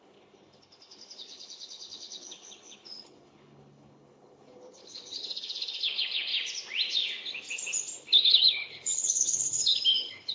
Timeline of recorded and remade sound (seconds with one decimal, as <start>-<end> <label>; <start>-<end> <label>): 0.0-6.3 remade; 6.3-8.0 recorded; 8.0-10.3 remade